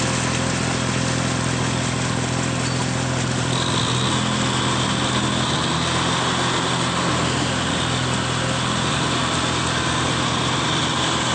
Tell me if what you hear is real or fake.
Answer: real